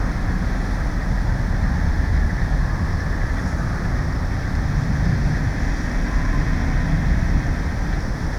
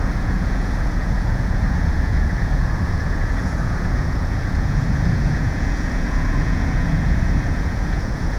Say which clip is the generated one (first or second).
second